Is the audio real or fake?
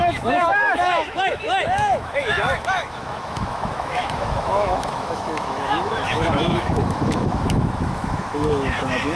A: fake